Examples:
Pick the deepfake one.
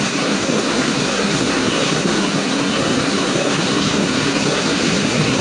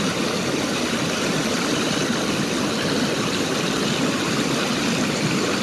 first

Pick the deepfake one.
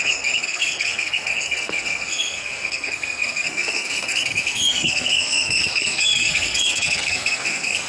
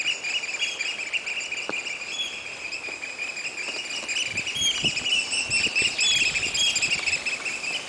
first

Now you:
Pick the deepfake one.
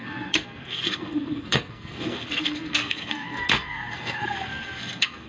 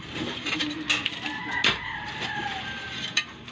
first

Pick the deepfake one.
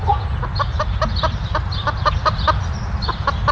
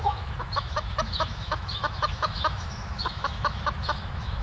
second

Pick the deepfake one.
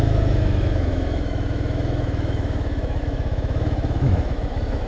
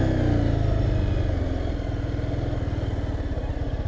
first